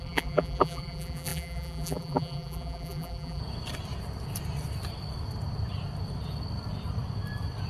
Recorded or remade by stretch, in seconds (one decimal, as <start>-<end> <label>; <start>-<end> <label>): 0.0-3.4 remade; 3.4-7.7 recorded

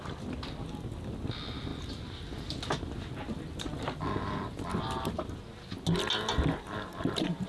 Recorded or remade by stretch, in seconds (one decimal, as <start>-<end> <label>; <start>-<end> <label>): 0.0-7.5 recorded

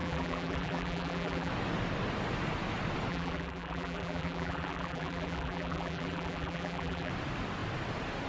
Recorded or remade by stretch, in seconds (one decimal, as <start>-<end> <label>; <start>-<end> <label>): 0.0-1.5 remade; 1.5-3.1 recorded; 3.1-7.1 remade; 7.1-8.3 recorded

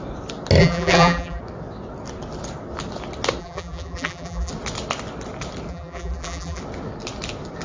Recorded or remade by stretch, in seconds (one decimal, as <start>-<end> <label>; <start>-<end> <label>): 0.0-0.6 recorded; 0.6-1.4 remade; 1.4-3.4 recorded; 3.4-4.5 remade; 4.5-5.7 recorded; 5.7-6.6 remade; 6.6-7.6 recorded

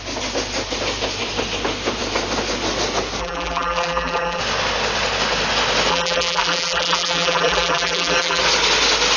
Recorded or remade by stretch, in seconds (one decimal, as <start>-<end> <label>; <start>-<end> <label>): 0.0-3.2 recorded; 3.2-4.4 remade; 4.4-5.9 recorded; 5.9-8.4 remade; 8.4-9.2 recorded

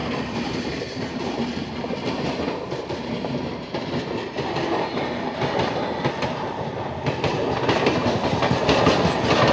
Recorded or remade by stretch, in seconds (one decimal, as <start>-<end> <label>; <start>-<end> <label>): 0.0-1.3 remade; 1.3-2.0 recorded; 2.0-3.4 remade; 3.4-9.5 recorded